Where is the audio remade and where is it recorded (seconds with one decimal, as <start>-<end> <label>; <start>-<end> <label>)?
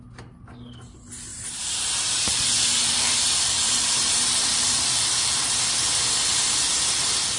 0.0-1.3 recorded; 1.3-5.4 remade; 5.4-7.4 recorded